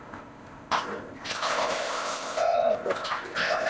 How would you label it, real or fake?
fake